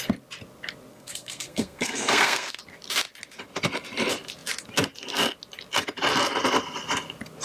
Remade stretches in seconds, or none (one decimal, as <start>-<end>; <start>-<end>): 0.9-2.6